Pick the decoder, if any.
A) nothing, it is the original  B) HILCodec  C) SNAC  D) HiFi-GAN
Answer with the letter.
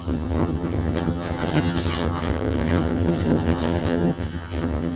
D